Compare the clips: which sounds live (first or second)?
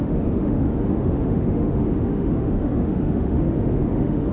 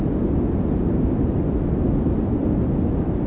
second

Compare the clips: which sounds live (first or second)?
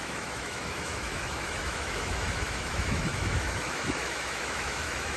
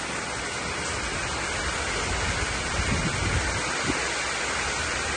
second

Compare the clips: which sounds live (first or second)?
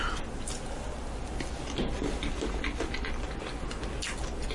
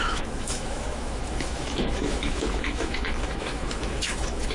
first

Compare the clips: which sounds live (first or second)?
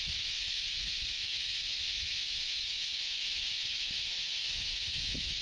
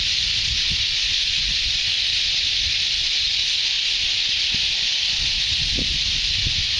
second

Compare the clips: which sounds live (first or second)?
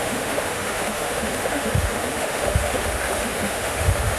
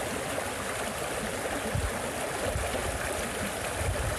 second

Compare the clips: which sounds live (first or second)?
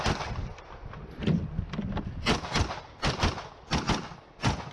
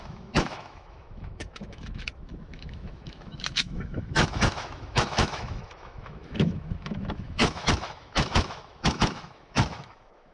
first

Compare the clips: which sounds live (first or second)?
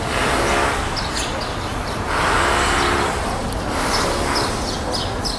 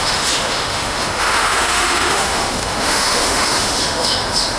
first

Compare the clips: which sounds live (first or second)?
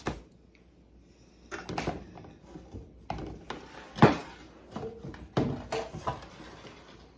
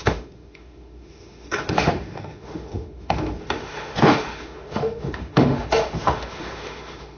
first